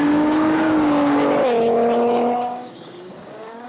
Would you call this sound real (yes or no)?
no